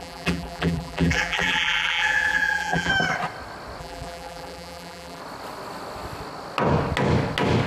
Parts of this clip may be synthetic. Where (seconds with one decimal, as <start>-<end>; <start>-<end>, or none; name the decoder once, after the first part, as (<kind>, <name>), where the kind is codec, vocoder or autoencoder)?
0.0-2.9 (vocoder, BigVGAN v2); 3.8-5.2